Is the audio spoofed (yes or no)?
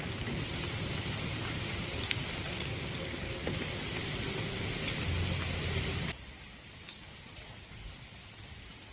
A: no